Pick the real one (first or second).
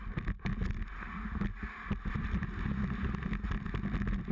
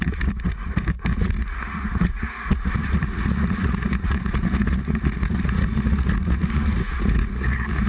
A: first